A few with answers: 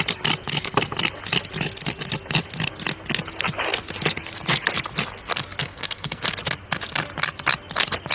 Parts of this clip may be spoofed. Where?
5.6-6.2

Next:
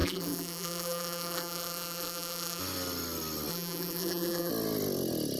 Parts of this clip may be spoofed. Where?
0.0-2.6; 3.5-4.5

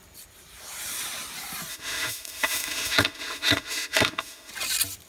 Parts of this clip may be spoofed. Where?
1.7-4.5

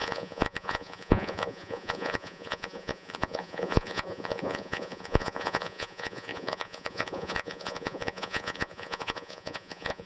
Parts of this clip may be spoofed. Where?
0.0-10.1